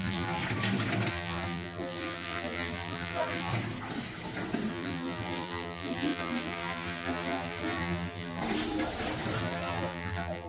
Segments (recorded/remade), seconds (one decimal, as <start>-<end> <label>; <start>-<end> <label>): 0.0-0.4 remade; 0.4-1.1 recorded; 1.1-3.5 remade; 3.5-4.7 recorded; 4.7-8.4 remade; 8.4-9.4 recorded; 9.4-10.5 remade